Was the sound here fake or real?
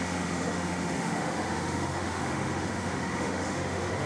fake